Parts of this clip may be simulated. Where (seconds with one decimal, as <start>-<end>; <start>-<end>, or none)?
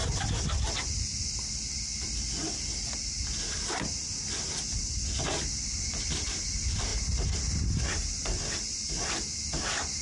0.0-10.0